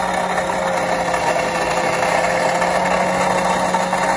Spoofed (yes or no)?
no